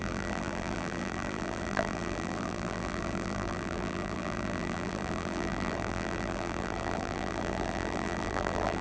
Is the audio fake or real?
fake